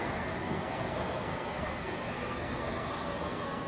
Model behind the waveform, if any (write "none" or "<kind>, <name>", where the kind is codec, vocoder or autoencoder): codec, SNAC